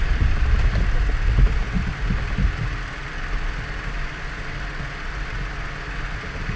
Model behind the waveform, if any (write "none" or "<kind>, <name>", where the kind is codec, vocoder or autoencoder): none